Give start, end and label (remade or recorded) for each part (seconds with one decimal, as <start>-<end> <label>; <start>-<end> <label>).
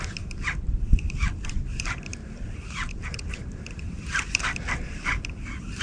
0.0-5.8 recorded